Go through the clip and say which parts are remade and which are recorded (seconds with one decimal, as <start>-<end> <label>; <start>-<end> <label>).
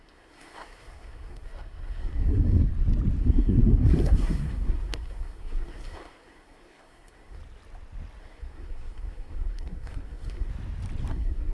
0.0-2.7 remade; 2.7-3.2 recorded; 3.2-7.4 remade; 7.4-8.2 recorded; 8.2-10.5 remade; 10.5-11.1 recorded; 11.1-11.5 remade